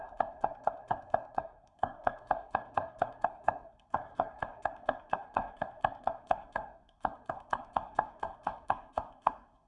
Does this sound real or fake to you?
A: fake